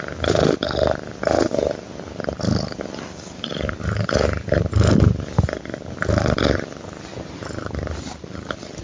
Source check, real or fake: real